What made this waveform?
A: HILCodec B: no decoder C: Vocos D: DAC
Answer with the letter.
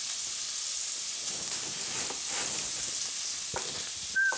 B